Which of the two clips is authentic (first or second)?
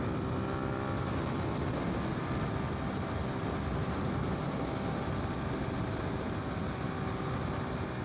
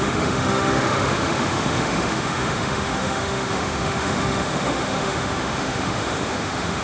first